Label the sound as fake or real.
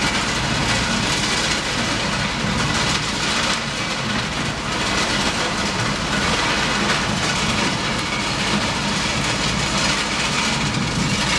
real